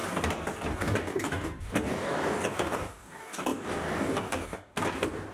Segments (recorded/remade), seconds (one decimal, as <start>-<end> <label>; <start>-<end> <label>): 0.0-0.7 recorded; 0.7-4.7 remade; 4.7-5.3 recorded